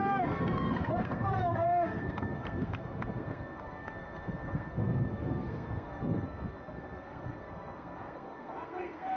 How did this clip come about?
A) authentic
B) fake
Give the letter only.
B